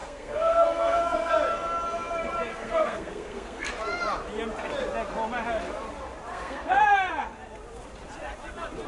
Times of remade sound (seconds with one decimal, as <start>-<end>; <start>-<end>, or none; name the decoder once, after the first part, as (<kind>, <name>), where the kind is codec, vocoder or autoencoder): 0.0-1.3 (codec, SNAC); 2.5-3.7; 6.3-7.1